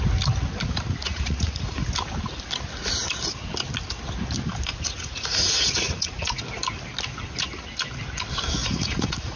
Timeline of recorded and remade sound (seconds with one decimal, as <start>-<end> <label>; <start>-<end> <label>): 0.0-1.0 recorded; 1.0-1.9 remade; 1.9-4.7 recorded; 4.7-6.4 remade; 6.4-8.6 recorded; 8.6-9.4 remade